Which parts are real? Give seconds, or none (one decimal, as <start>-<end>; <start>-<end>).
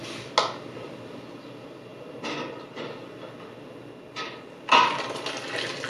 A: 0.0-1.9; 2.8-5.9